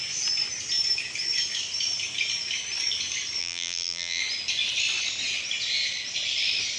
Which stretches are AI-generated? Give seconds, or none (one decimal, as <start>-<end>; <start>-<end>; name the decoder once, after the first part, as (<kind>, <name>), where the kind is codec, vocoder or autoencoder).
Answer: 3.4-4.2 (vocoder, BigVGAN v2)